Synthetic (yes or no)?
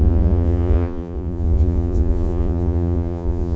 yes